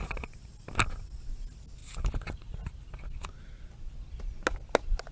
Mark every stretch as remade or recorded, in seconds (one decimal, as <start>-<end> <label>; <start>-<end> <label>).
0.0-5.1 recorded